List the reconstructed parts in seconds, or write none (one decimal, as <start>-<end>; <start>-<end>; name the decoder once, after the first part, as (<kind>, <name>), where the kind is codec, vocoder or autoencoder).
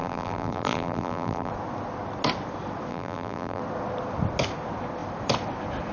0.0-1.5 (vocoder, BigVGAN v2); 2.9-3.6